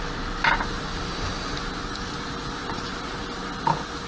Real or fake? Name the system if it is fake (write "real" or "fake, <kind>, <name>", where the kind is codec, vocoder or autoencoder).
real